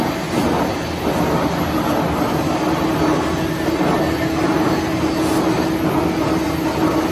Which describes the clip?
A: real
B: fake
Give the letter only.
A